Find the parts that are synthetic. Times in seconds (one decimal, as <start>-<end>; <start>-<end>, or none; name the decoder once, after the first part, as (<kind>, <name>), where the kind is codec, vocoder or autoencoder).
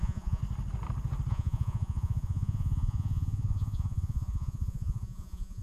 0.0-0.4 (vocoder, Vocos); 1.3-5.6